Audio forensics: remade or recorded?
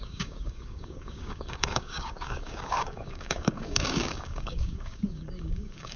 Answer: remade